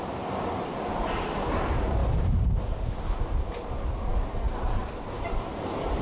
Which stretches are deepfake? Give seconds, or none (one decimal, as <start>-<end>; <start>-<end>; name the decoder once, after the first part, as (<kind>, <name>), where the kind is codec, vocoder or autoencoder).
none